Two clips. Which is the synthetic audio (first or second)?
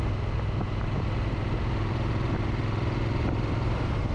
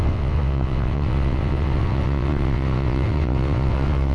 second